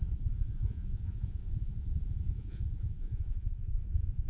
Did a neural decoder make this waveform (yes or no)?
yes